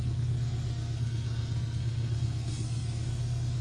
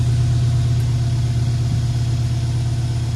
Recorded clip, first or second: second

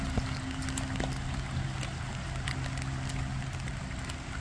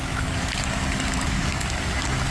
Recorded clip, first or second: first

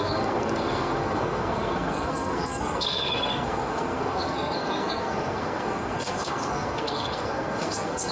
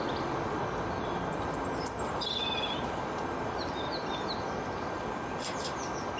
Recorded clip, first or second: second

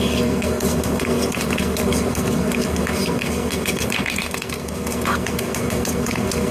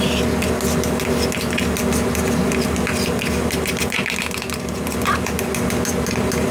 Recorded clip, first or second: second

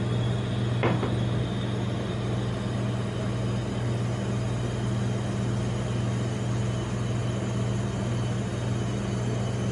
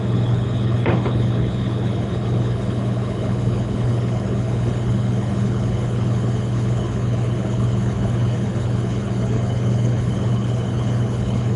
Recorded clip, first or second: first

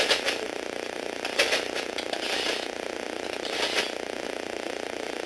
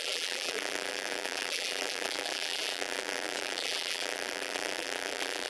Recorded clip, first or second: first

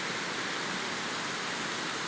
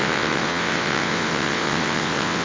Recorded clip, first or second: first